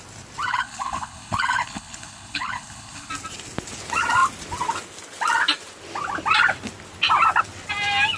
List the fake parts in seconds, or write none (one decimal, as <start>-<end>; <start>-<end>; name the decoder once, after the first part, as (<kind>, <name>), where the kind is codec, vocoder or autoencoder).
0.5-3.1 (codec, HILCodec)